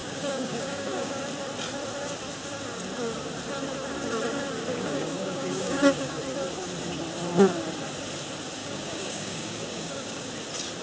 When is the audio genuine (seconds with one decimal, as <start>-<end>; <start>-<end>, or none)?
1.2-4.7; 6.2-8.6; 10.3-10.8